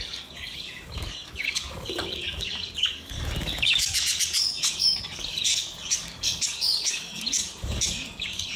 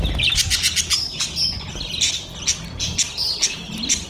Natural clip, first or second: second